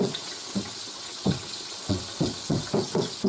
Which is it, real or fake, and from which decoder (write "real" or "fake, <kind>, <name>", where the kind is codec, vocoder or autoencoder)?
fake, vocoder, WaveNeXt